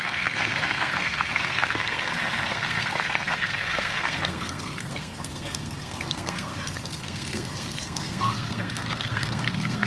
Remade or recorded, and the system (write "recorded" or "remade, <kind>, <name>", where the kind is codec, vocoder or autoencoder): remade, codec, SNAC